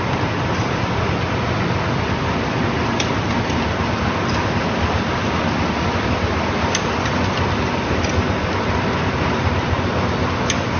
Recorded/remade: recorded